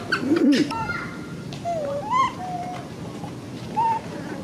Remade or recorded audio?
recorded